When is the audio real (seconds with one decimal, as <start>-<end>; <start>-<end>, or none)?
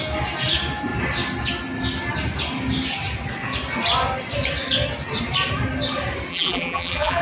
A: 0.0-6.3